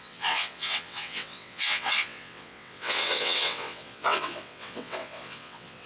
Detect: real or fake fake